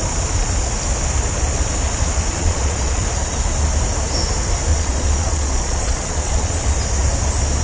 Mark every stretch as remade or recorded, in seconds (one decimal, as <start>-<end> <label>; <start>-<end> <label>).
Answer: 0.0-2.4 recorded; 2.4-3.0 remade; 3.0-4.7 recorded; 4.7-6.6 remade; 6.6-7.6 recorded